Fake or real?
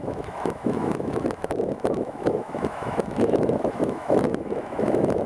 fake